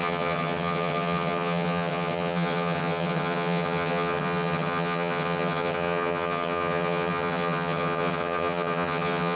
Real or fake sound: fake